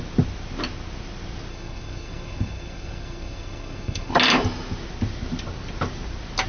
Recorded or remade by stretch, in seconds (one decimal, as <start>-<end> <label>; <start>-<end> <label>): 0.0-1.5 recorded; 1.5-4.1 remade; 4.1-6.5 recorded